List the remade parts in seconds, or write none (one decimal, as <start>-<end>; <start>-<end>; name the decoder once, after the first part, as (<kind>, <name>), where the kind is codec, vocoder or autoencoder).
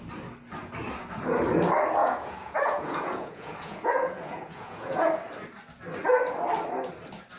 2.0-5.1 (vocoder, Vocos)